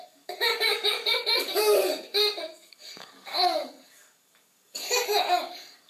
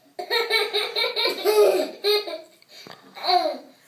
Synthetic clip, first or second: first